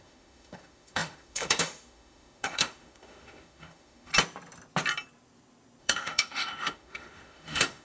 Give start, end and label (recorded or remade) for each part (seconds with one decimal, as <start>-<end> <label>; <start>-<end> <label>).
0.0-4.1 remade; 4.1-5.8 recorded; 5.8-7.8 remade

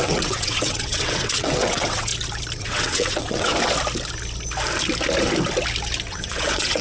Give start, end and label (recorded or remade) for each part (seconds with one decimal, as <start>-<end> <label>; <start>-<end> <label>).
0.0-2.1 remade; 2.1-2.6 recorded; 2.6-3.5 remade; 3.5-6.1 recorded; 6.1-6.8 remade

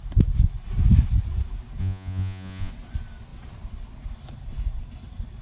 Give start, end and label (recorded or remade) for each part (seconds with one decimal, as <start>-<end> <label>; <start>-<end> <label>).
0.0-1.8 recorded; 1.8-2.7 remade; 2.7-5.4 recorded

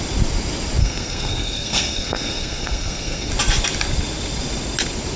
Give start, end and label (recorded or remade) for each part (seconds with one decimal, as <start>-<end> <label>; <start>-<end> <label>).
0.0-0.8 recorded; 0.8-3.3 remade; 3.3-5.2 recorded

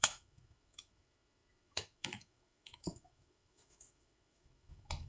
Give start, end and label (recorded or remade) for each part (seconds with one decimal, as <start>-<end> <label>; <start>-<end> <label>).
0.0-5.1 remade